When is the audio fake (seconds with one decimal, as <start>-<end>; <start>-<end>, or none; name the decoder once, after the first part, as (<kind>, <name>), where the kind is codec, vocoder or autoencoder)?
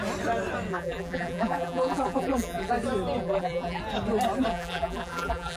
0.7-2.7 (vocoder, BigVGAN v2); 3.2-3.8; 4.5-5.6